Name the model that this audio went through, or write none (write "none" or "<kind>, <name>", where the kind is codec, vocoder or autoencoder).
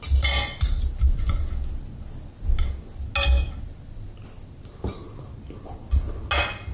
none